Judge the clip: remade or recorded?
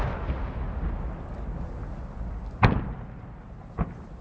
recorded